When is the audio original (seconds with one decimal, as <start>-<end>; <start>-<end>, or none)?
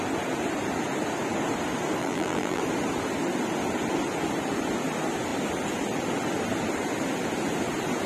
0.0-2.0; 2.6-8.1